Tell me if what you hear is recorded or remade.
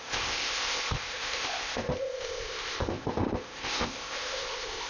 remade